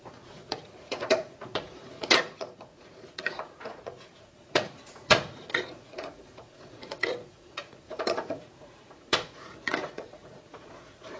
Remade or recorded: remade